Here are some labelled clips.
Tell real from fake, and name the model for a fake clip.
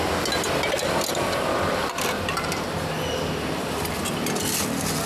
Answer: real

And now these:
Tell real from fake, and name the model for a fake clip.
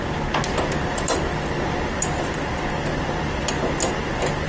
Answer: real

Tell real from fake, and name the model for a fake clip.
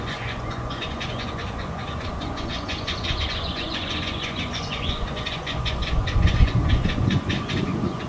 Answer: fake, vocoder, Vocos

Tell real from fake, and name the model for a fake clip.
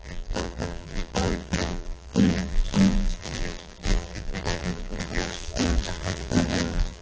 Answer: fake, vocoder, BigVGAN v2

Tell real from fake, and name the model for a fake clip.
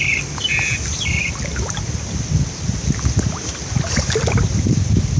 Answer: real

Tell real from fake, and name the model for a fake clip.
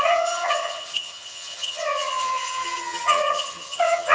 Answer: fake, vocoder, HiFi-GAN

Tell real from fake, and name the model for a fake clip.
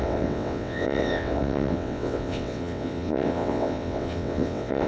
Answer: fake, vocoder, WaveNeXt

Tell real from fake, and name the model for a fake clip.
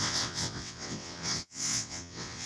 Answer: fake, vocoder, WaveNeXt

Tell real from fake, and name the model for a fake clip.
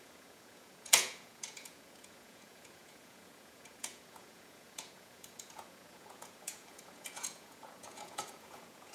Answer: fake, vocoder, Vocos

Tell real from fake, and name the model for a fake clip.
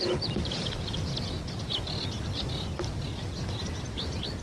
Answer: real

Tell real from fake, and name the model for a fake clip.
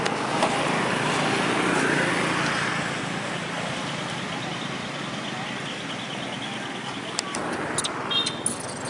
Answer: real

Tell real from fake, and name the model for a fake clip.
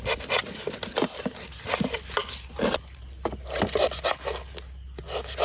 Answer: real